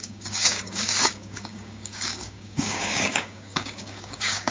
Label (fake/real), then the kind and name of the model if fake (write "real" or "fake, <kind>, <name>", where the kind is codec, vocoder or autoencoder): fake, codec, DAC